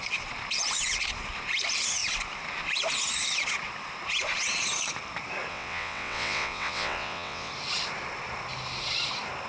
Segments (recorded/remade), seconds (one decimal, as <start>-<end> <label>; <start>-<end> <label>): 0.0-5.5 recorded; 5.5-7.5 remade; 7.5-9.5 recorded